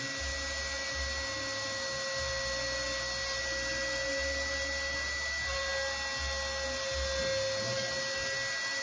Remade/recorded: recorded